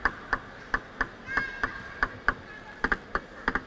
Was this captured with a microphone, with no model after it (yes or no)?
yes